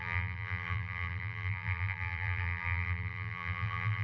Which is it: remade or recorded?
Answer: remade